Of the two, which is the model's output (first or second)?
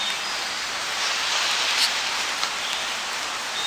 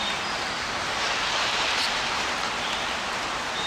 second